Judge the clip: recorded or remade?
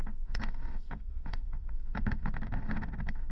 remade